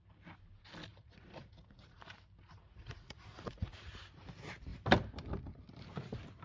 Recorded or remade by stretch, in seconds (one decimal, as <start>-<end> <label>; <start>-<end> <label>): 0.0-0.9 recorded; 0.9-2.0 remade; 2.0-2.4 recorded; 2.4-3.9 remade; 3.9-6.4 recorded